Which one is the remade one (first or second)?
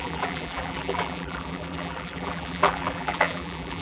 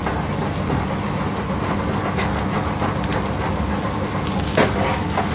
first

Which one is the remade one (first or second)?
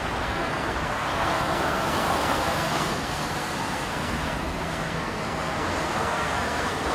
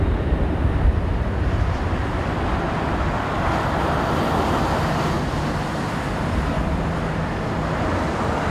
first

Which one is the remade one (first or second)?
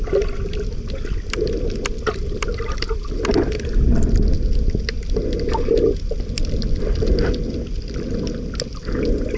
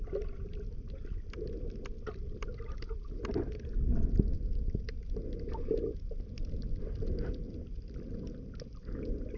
second